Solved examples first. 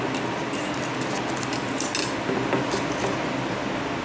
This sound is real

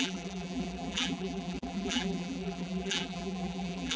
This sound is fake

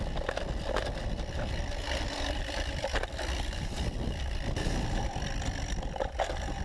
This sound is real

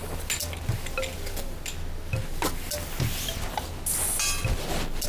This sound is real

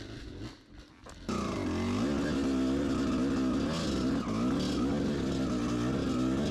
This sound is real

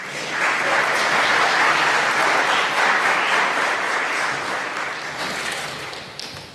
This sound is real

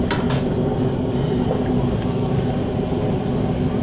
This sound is real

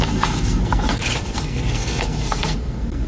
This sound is fake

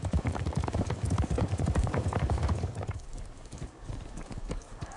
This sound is fake